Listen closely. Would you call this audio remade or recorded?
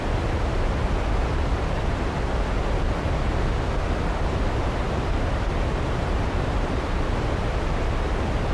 recorded